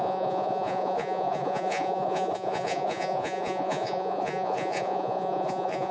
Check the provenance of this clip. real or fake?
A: fake